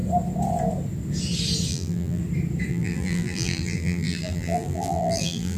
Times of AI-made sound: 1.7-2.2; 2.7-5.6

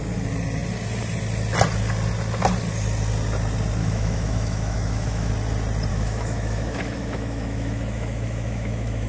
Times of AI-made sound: 3.8-5.3; 5.9-9.1

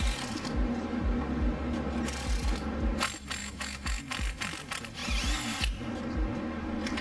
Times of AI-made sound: 3.4-4.0